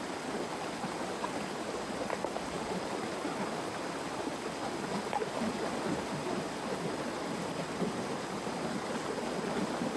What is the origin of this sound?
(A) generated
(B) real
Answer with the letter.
B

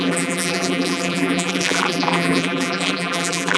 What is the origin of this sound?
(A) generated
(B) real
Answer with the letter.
A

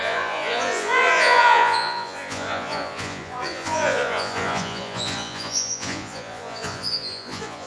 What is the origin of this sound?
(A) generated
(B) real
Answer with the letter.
A